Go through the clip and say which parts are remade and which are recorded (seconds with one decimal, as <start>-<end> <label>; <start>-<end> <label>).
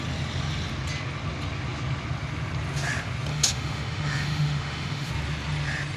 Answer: 0.0-3.3 recorded; 3.3-5.1 remade; 5.1-6.0 recorded